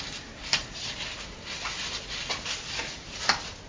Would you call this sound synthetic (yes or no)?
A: no